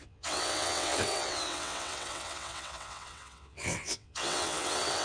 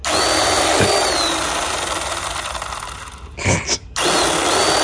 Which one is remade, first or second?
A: first